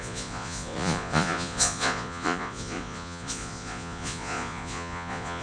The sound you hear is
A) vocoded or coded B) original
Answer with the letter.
A